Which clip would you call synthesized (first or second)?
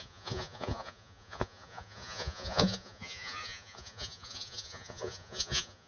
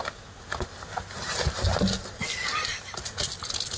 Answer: first